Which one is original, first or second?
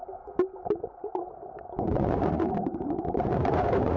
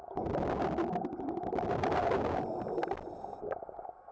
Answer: second